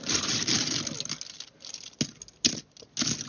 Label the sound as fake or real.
real